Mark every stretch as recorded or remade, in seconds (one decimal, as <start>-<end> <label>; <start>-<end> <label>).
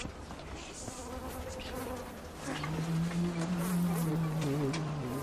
0.0-1.0 remade; 1.0-4.1 recorded; 4.1-5.2 remade